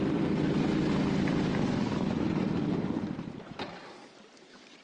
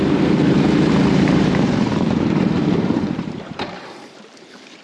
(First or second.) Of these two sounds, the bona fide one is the first